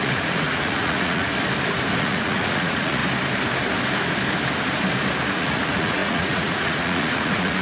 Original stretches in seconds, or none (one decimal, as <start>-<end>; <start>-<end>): 1.3-2.0; 3.0-5.3